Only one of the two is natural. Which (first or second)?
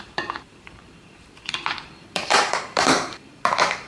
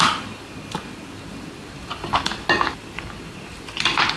second